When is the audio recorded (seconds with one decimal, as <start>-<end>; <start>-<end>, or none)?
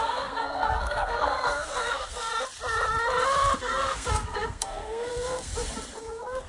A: 2.3-3.6; 5.5-6.0